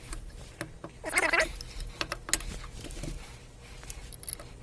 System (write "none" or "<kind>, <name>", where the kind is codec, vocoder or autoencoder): none